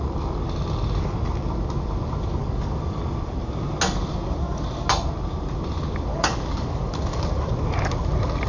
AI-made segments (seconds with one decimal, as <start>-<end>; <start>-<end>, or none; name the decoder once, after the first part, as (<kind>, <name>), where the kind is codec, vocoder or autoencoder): 2.4-3.1 (codec, DAC); 6.1-7.2